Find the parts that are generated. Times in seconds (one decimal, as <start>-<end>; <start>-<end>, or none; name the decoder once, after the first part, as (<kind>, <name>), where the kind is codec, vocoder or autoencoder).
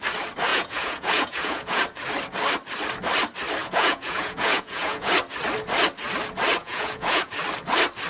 0.5-1.8 (vocoder, Vocos); 3.6-5.1; 6.6-7.3